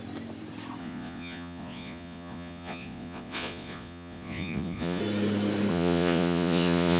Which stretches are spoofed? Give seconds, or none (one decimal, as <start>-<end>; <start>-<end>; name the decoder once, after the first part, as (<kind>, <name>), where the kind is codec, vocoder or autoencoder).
0.8-5.0 (vocoder, Vocos); 5.7-7.0

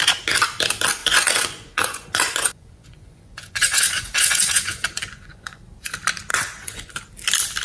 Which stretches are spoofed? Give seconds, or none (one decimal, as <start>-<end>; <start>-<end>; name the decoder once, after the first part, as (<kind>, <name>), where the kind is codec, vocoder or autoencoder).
1.0-5.6 (vocoder, Vocos); 6.3-6.9

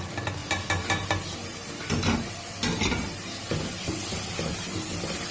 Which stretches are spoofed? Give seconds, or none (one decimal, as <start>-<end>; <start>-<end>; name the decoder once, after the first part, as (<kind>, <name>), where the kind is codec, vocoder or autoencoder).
none

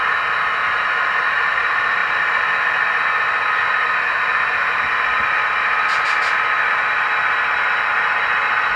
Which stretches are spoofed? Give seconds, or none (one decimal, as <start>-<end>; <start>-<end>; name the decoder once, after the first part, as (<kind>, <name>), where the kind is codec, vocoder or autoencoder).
none

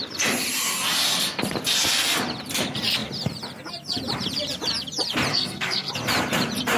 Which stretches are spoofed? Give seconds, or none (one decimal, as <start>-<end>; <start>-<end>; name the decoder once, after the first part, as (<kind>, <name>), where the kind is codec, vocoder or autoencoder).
5.3-5.9 (codec, SNAC)

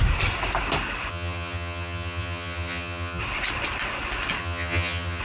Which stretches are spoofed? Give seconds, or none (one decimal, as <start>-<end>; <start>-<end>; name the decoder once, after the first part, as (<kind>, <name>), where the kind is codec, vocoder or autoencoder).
1.1-3.2 (vocoder, HiFi-GAN); 4.4-5.2